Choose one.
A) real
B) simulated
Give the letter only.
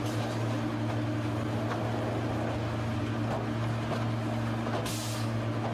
A